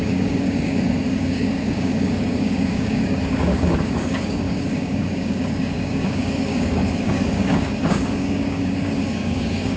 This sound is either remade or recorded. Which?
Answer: remade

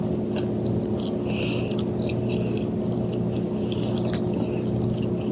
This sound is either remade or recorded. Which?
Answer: recorded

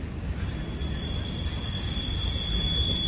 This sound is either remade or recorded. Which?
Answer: recorded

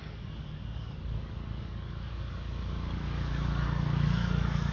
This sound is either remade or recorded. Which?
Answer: remade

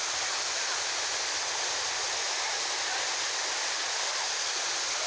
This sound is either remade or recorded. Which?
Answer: recorded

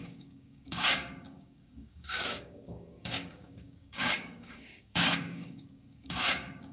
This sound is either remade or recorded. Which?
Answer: remade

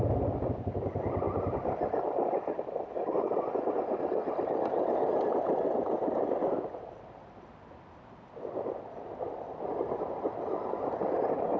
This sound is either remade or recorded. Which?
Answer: recorded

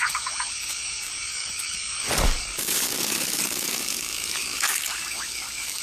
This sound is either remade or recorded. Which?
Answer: remade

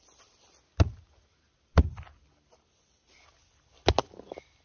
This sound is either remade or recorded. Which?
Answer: recorded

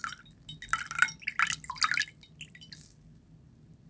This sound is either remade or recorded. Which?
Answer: recorded